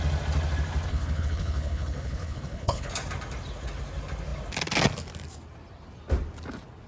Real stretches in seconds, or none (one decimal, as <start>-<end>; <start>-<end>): 0.0-0.9; 2.9-6.9